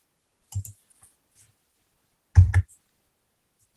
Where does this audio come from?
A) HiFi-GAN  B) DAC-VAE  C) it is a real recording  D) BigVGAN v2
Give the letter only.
C